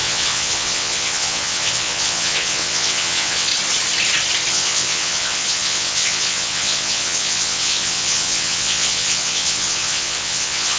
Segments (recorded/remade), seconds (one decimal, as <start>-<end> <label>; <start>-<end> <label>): 0.0-3.5 remade; 3.5-4.5 recorded; 4.5-10.8 remade